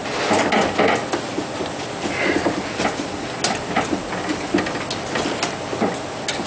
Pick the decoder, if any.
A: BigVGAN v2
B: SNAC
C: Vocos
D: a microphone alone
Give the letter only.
D